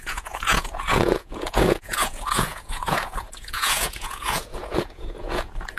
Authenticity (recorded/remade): remade